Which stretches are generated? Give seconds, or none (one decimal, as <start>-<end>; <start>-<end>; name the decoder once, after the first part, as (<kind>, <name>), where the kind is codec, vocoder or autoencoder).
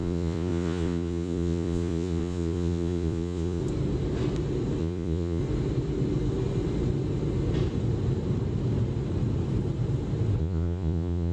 0.0-3.6 (vocoder, Vocos); 4.8-5.4; 10.4-11.3